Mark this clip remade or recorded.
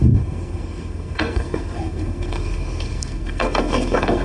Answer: remade